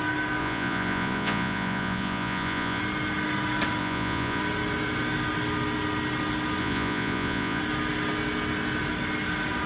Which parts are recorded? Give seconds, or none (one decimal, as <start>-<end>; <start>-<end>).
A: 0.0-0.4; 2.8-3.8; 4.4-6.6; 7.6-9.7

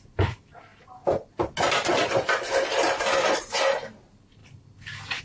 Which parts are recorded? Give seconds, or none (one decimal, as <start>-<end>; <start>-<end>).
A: 0.0-5.2

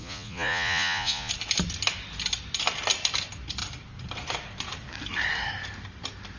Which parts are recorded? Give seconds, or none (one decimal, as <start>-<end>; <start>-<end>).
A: 1.3-6.4

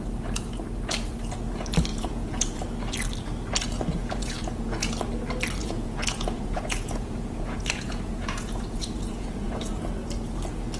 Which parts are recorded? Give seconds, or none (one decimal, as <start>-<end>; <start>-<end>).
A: 0.0-1.9; 2.6-4.0; 4.9-5.6; 9.7-10.8

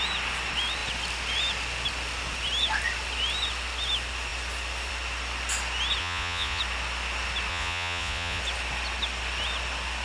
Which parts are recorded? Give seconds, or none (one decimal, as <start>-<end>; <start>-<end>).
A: 0.0-6.0; 6.6-7.5; 8.4-10.0

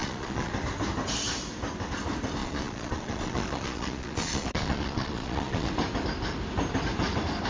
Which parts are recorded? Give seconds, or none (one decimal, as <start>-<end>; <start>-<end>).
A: 0.5-2.4; 5.7-7.5

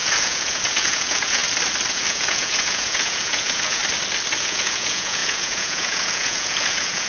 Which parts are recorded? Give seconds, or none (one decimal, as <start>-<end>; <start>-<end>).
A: 1.4-1.9; 3.8-4.4